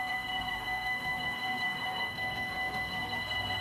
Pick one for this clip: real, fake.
fake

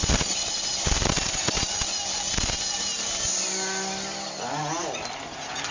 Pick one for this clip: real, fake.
real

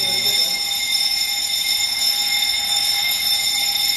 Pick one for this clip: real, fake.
fake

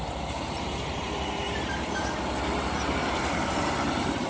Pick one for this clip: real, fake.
fake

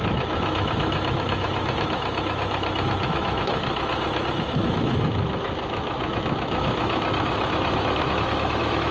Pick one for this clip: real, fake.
fake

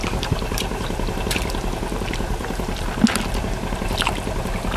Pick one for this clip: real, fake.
real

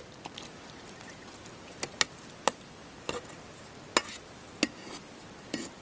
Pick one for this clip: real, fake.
real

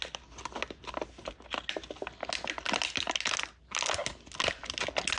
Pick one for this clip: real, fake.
real